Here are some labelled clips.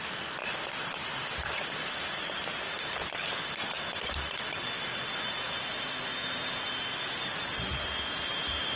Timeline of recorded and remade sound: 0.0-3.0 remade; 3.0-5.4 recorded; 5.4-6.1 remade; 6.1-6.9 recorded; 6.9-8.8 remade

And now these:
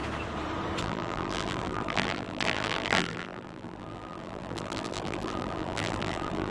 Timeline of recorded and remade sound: 0.0-0.8 recorded; 0.8-6.5 remade

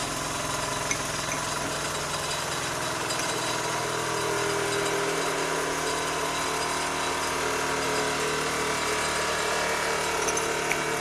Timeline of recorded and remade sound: 0.0-0.7 remade; 0.7-11.0 recorded

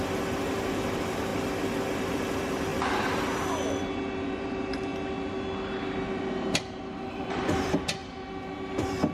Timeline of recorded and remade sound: 0.0-1.3 remade; 1.3-2.2 recorded; 2.2-2.7 remade; 2.7-3.8 recorded; 3.8-4.9 remade; 4.9-6.3 recorded; 6.3-9.1 remade

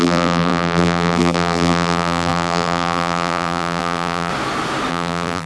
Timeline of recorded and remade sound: 0.0-4.3 remade; 4.3-4.9 recorded; 4.9-5.5 remade

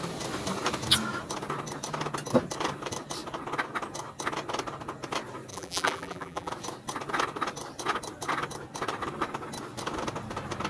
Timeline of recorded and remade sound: 0.0-5.5 recorded; 5.5-6.5 remade; 6.5-10.7 recorded

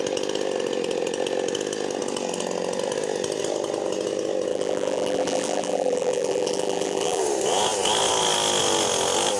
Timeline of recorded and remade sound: 0.0-4.5 recorded; 4.5-7.2 remade; 7.2-9.4 recorded